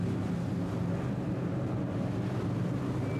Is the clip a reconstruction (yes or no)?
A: no